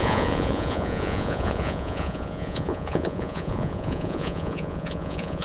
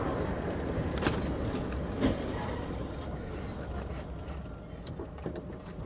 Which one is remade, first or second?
first